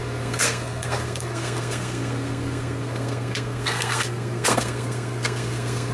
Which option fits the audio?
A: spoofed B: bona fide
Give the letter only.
A